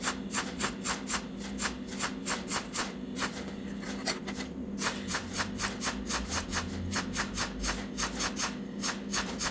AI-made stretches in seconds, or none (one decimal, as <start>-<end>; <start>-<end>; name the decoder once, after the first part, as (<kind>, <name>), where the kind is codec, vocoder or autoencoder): none